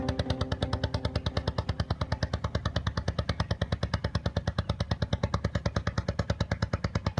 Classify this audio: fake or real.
real